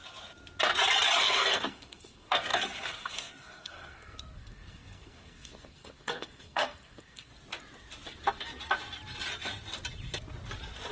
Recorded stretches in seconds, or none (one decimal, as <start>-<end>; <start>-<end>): 0.0-1.2; 7.3-10.9